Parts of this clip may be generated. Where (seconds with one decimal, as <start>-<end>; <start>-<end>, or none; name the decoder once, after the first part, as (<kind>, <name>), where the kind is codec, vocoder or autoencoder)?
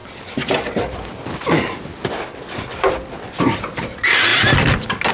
none